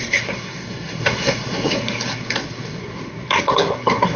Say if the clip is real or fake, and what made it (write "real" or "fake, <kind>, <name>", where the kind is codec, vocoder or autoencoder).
fake, codec, SNAC